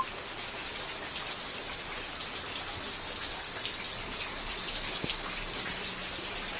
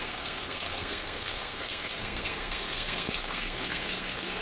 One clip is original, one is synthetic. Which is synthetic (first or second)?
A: second